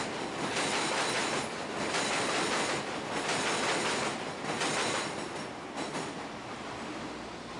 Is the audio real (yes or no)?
yes